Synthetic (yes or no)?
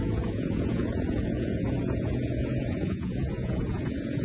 yes